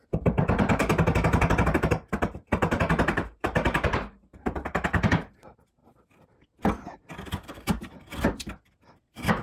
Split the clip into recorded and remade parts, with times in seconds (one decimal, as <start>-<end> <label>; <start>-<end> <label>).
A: 0.0-5.8 remade; 5.8-7.3 recorded; 7.3-8.1 remade; 8.1-9.0 recorded; 9.0-9.4 remade